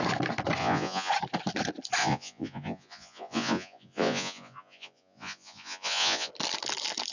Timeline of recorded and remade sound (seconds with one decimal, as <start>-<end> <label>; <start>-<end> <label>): 0.0-0.6 recorded; 0.6-1.1 remade; 1.1-2.0 recorded; 2.0-6.3 remade; 6.3-7.1 recorded